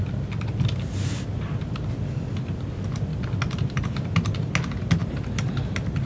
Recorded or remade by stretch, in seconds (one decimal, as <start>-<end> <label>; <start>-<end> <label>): 0.0-6.1 recorded